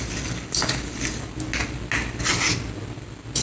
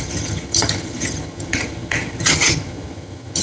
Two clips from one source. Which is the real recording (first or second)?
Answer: first